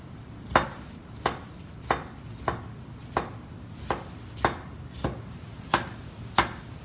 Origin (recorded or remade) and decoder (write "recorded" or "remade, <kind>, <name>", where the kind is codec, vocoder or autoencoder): recorded